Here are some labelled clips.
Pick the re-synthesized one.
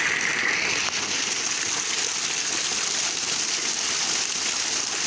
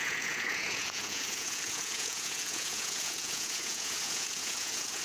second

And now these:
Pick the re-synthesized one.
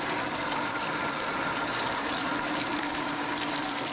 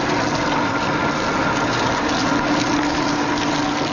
first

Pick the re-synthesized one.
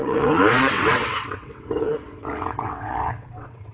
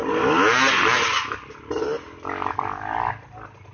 first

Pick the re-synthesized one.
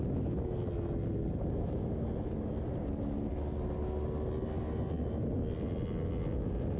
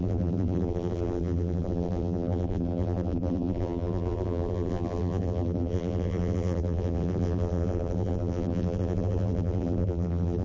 second